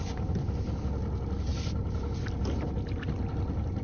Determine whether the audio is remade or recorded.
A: recorded